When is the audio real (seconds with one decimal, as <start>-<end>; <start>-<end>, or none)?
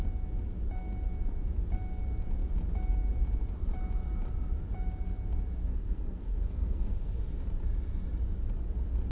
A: 0.0-5.7; 7.2-9.1